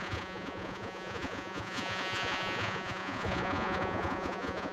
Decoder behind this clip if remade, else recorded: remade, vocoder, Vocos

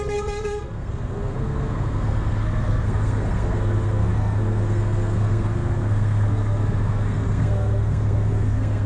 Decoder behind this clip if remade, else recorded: remade, codec, SNAC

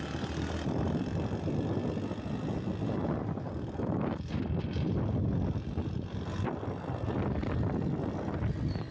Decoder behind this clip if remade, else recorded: recorded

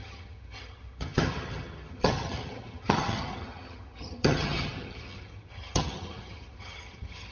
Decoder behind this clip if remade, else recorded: remade, vocoder, HiFi-GAN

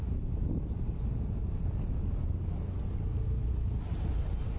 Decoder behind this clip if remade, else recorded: recorded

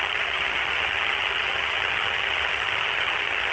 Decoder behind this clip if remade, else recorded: remade, vocoder, HiFi-GAN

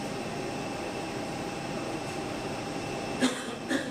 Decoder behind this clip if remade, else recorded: recorded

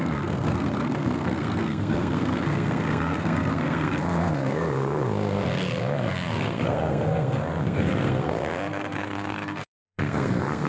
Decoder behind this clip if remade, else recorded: remade, codec, SNAC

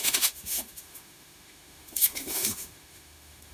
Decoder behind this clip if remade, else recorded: remade, autoencoder, DAC-VAE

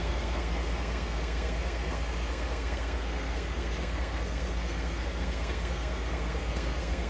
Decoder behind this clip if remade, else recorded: remade, codec, SNAC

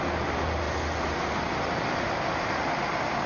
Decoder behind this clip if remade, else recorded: recorded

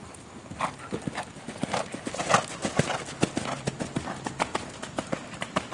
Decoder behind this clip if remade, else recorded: recorded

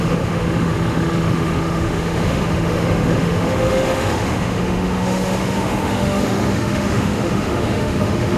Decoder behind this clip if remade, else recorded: remade, autoencoder, DAC-VAE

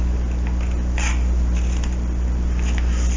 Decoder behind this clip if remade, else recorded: recorded